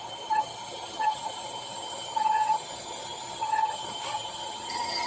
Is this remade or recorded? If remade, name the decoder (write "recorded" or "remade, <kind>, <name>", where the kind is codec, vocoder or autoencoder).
remade, vocoder, HiFi-GAN